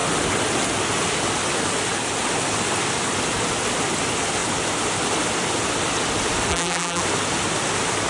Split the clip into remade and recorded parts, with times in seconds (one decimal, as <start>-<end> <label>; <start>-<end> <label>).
0.0-6.5 recorded; 6.5-7.0 remade; 7.0-8.1 recorded